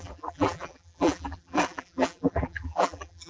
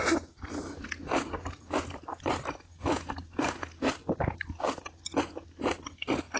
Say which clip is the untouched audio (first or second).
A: second